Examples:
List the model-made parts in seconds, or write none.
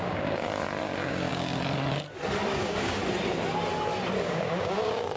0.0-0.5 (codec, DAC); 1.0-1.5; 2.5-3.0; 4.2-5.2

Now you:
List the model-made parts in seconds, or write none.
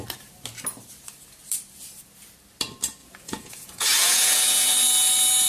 3.0-4.8 (vocoder, Vocos)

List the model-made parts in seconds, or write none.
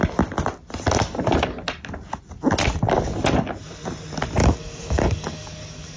4.4-6.0 (codec, DAC)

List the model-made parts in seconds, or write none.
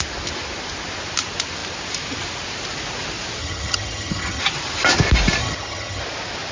3.4-4.4 (vocoder, HiFi-GAN); 5.4-6.0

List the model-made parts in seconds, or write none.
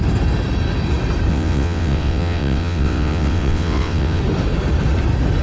1.3-4.2 (vocoder, WaveNeXt)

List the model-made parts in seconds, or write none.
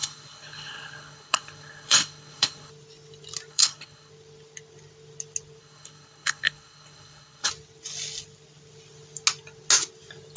0.0-2.7 (codec, HILCodec); 3.5-4.1; 5.6-7.5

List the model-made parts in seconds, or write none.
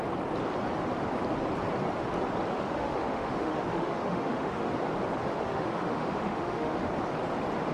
2.5-4.7 (autoencoder, DAC-VAE); 5.2-6.9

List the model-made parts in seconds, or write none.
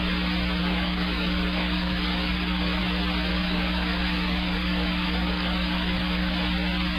0.6-2.8 (codec, DAC); 3.3-6.4